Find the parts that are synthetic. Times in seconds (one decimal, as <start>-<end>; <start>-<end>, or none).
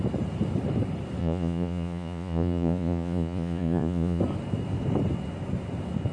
1.2-4.2